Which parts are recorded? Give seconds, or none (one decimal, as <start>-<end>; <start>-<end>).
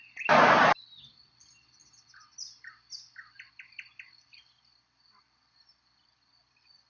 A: none